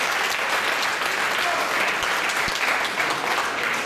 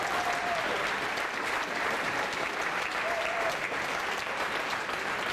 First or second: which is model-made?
second